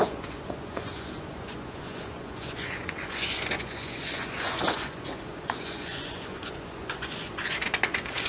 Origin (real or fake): fake